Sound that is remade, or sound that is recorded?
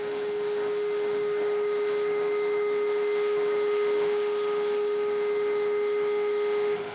remade